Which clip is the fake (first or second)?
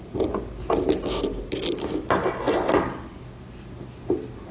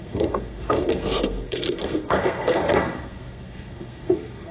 second